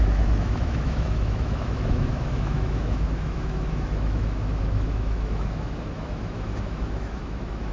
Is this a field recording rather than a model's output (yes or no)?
no